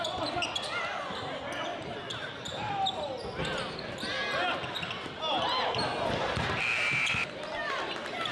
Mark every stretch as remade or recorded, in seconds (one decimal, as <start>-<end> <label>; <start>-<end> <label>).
0.0-8.3 recorded